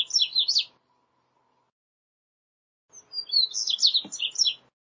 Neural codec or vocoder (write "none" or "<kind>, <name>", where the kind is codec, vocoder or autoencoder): none